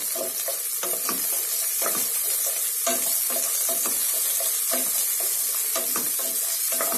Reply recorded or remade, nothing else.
recorded